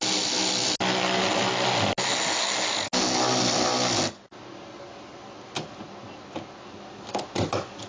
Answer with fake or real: real